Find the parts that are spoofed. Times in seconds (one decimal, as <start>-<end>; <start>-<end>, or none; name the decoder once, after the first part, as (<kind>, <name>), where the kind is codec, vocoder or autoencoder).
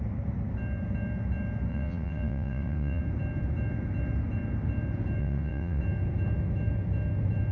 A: 1.7-3.0 (vocoder, WaveNeXt); 5.2-5.8